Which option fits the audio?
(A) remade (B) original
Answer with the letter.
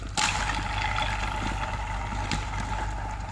B